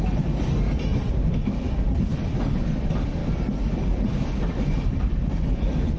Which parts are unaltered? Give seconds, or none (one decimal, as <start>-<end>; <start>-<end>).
0.0-6.0